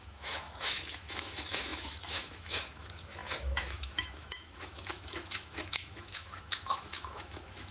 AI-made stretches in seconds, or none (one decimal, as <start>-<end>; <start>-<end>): 0.0-7.7